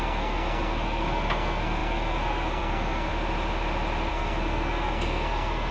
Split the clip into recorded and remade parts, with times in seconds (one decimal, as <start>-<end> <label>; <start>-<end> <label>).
0.0-3.1 remade; 3.1-4.1 recorded; 4.1-5.7 remade